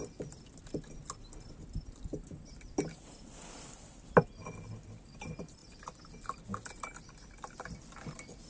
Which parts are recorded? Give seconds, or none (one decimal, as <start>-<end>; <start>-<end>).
0.0-8.5